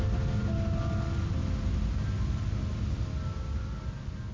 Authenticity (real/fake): real